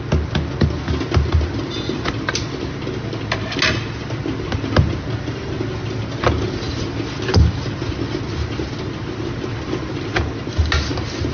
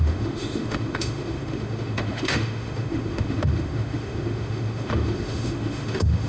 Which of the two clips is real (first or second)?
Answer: first